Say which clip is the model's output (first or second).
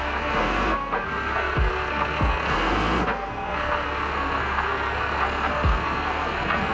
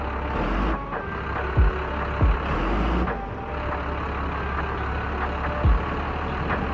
first